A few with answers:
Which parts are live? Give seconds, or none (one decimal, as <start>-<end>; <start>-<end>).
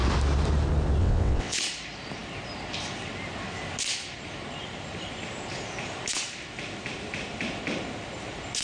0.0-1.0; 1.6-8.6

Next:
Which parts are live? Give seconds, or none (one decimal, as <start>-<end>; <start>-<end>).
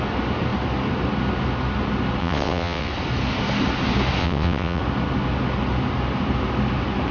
0.0-2.2; 2.9-4.2; 4.8-7.1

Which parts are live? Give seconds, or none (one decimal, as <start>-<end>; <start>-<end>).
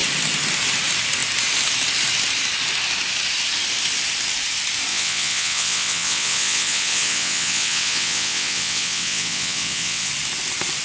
0.0-4.9; 10.1-10.8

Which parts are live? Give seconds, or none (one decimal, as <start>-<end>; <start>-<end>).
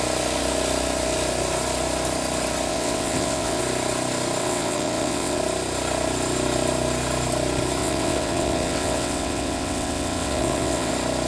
0.0-2.7; 3.6-4.4; 5.4-7.8; 10.9-11.3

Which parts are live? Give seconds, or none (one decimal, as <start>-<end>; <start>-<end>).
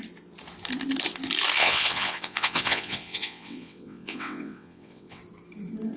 0.0-1.6; 5.2-6.0